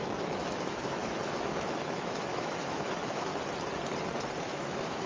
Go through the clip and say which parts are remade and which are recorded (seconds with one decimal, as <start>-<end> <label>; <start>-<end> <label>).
0.0-3.3 remade; 3.3-4.4 recorded; 4.4-5.1 remade